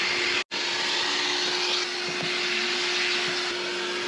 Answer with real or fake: real